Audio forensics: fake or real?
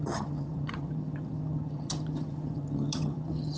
fake